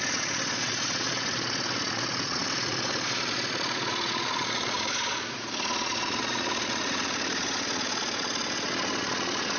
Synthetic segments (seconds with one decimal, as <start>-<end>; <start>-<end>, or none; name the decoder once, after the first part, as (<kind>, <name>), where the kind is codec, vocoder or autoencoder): 0.0-9.6 (vocoder, Vocos)

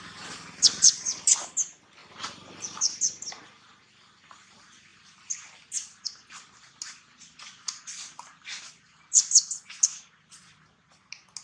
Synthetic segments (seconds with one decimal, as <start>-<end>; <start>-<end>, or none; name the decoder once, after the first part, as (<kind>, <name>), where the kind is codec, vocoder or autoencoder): none

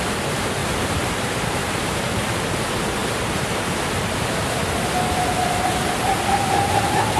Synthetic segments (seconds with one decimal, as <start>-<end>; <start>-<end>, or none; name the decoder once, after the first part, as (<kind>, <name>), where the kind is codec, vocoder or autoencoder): 0.6-2.3 (vocoder, BigVGAN v2); 3.0-4.0

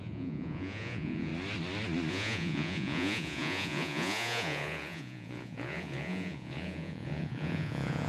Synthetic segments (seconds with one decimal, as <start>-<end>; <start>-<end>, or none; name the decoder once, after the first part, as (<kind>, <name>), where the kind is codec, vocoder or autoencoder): 0.0-1.3 (vocoder, Vocos); 2.1-8.1